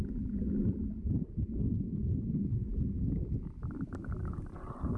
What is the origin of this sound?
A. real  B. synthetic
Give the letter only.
A